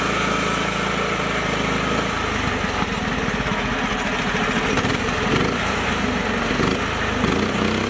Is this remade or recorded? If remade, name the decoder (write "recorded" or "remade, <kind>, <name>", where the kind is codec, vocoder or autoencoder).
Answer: recorded